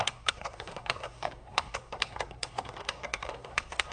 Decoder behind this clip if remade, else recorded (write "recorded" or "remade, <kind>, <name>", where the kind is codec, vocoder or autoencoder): remade, codec, SNAC